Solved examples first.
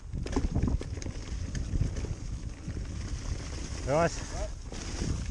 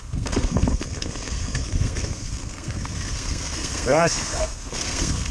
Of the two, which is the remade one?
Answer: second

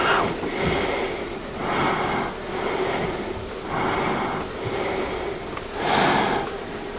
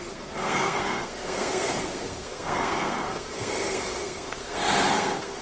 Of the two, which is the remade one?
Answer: second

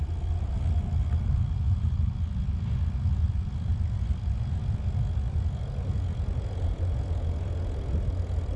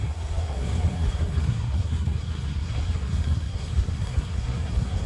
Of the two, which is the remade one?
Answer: second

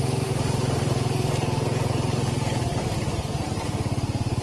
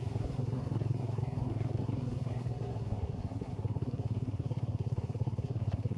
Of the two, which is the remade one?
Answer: second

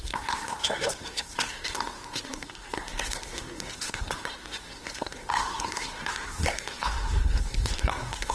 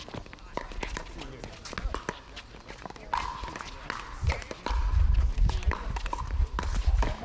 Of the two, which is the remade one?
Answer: first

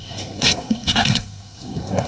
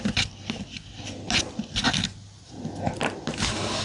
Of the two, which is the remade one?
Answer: first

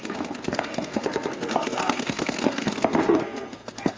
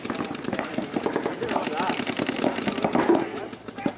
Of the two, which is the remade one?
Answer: first